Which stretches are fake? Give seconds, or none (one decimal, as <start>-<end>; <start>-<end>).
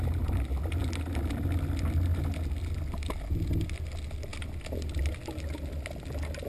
none